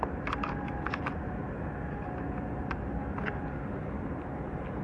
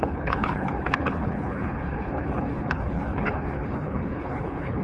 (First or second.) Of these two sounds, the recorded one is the first